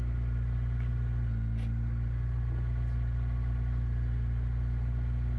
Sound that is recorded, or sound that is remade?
recorded